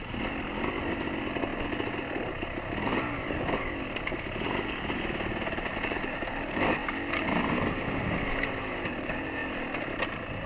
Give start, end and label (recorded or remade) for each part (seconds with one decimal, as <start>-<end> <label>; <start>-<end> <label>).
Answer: 0.0-10.5 recorded